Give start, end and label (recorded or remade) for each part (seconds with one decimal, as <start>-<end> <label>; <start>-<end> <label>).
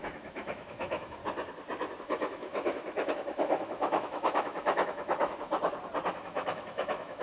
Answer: 0.0-1.2 remade; 1.2-2.0 recorded; 2.0-5.5 remade; 5.5-6.2 recorded; 6.2-7.2 remade